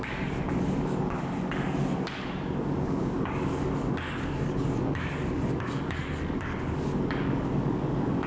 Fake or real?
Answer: fake